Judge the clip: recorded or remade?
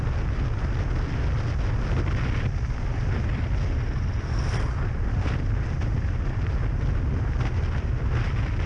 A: recorded